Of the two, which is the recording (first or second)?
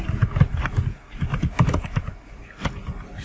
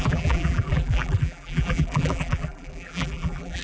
first